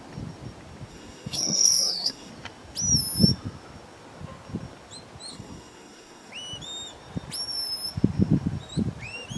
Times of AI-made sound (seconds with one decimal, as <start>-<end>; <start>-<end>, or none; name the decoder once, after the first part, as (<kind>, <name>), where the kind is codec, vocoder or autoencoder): 0.9-2.3 (codec, SNAC); 5.3-6.3